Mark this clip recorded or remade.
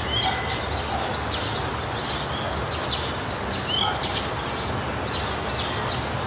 recorded